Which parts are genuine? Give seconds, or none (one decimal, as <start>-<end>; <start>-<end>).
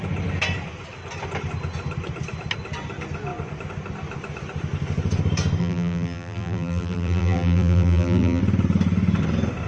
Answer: 0.0-5.6; 8.4-9.7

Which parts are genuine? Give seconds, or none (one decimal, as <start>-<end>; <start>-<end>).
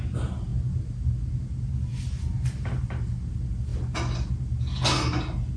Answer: 0.0-5.6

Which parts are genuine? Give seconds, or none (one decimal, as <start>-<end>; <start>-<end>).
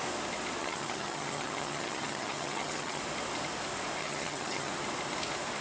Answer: 0.0-0.6; 3.0-4.0; 4.7-5.6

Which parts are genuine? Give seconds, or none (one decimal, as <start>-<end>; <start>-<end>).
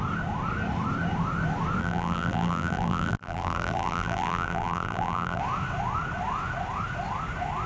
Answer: 0.0-1.8; 5.4-7.7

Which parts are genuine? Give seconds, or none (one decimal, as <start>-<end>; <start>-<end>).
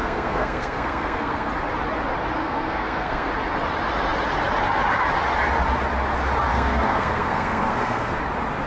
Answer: 1.5-2.4; 3.3-6.5; 8.2-8.7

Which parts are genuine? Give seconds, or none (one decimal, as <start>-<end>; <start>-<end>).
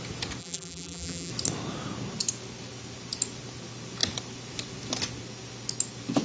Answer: 0.0-0.4; 1.3-6.2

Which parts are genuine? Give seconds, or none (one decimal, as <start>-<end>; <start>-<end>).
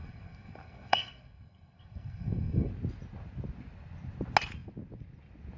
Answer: 2.7-5.6